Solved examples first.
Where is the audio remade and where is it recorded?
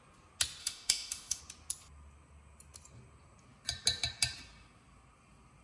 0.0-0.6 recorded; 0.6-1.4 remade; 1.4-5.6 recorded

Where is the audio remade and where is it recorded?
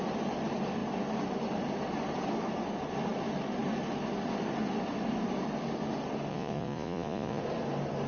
0.0-6.3 recorded; 6.3-7.4 remade; 7.4-8.1 recorded